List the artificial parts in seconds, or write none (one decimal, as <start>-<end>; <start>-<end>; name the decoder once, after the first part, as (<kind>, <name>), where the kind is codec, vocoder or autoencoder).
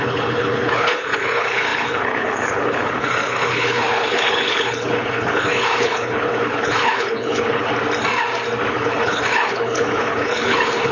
0.0-7.7 (codec, HILCodec); 8.7-10.9